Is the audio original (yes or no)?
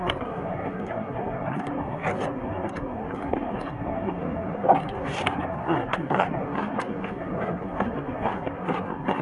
no